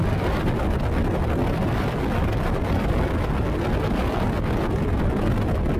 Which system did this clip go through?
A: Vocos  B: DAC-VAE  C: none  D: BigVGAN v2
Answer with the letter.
C